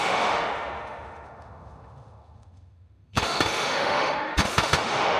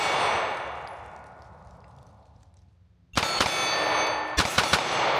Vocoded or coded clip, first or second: first